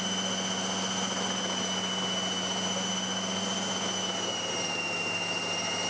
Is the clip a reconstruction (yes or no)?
no